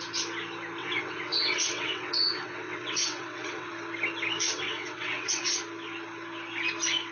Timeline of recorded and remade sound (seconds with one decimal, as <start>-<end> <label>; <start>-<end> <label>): 0.0-0.8 recorded; 0.8-3.7 remade; 3.7-4.5 recorded; 4.5-5.6 remade; 5.6-7.1 recorded